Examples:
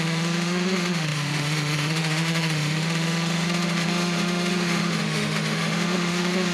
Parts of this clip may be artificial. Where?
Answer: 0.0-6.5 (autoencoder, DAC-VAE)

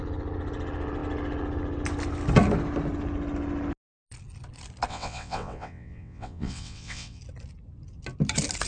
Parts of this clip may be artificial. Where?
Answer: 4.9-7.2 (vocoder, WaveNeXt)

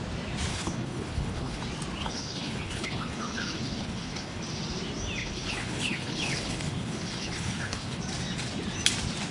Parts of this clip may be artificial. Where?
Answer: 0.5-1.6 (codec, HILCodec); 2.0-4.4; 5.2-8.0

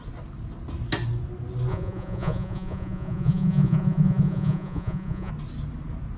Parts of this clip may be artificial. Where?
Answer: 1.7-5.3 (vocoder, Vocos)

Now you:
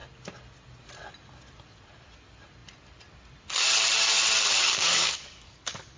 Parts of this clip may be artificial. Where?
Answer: 4.7-6.0 (codec, DAC)

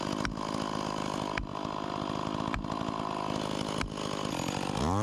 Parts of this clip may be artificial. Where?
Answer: none

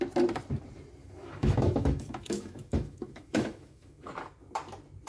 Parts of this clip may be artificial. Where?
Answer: 1.0-4.1 (autoencoder, DAC-VAE)